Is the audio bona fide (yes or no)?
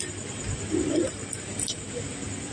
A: no